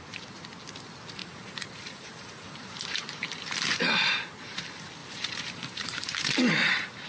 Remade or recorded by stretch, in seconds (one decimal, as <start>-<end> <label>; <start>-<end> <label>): 0.0-1.2 recorded; 1.2-4.1 remade; 4.1-5.0 recorded; 5.0-6.5 remade; 6.5-7.1 recorded